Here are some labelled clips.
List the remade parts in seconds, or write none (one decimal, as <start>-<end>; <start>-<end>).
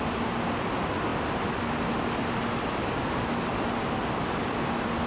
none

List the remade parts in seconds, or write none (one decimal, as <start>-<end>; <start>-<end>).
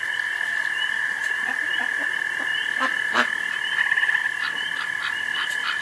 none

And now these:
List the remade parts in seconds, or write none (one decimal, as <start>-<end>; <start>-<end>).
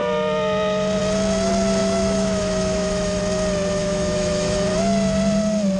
1.8-3.2; 3.8-4.7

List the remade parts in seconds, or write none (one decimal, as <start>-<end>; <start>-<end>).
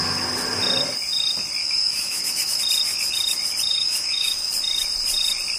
1.6-2.6; 3.7-4.5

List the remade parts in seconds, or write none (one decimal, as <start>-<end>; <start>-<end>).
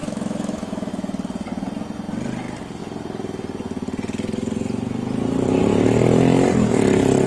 0.0-0.9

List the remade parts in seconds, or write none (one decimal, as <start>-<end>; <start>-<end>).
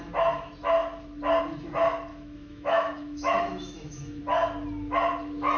2.1-4.2